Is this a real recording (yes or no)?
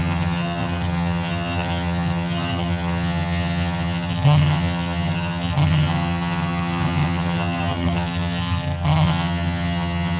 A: no